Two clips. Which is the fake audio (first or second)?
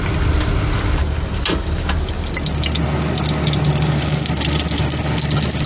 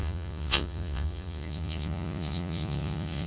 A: second